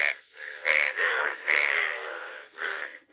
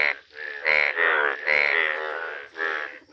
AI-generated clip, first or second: first